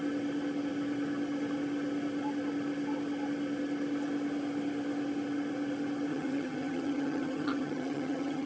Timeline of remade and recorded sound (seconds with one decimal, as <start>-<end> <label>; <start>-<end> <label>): 0.0-6.1 recorded; 6.1-8.5 remade